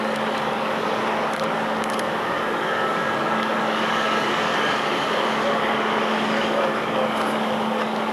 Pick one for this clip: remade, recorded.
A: remade